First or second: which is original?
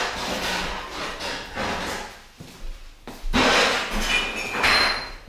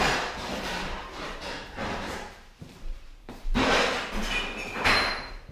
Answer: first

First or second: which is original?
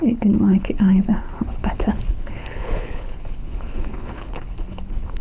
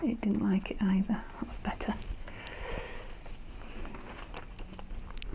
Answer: second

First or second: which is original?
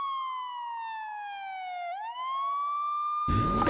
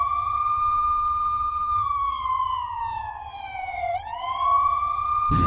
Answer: first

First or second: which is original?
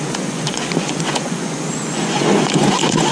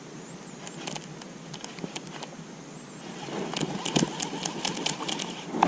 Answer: second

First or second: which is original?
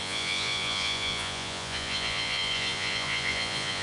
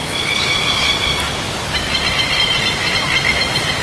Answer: second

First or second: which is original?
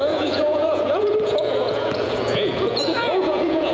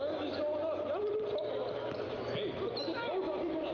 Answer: second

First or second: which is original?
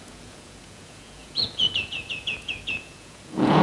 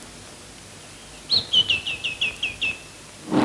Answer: second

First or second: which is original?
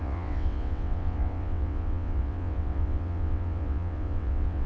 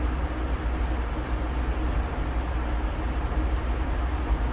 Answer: second